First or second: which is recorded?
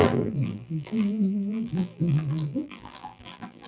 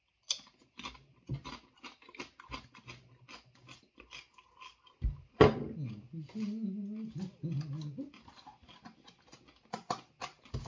second